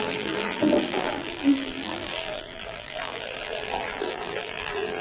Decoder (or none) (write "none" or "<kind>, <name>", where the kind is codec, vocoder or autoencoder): vocoder, BigVGAN v2